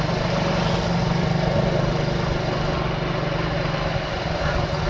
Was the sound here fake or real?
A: real